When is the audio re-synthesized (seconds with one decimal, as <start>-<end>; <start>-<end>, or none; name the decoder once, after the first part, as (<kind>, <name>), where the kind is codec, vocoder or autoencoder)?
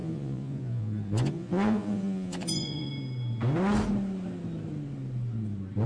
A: 0.0-2.9 (vocoder, Vocos)